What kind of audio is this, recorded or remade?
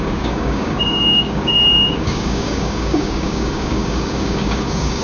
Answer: remade